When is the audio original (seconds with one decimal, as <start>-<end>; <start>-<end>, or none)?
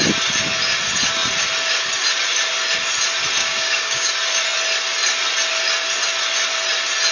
0.0-3.4; 4.1-7.1